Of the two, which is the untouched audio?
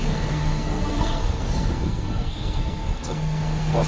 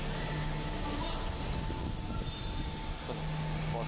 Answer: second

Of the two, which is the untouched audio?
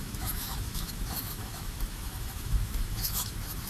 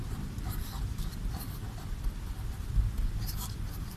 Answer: second